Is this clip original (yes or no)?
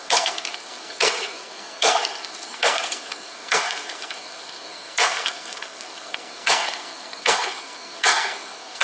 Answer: no